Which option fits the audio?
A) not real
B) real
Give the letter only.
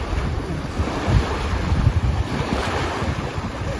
B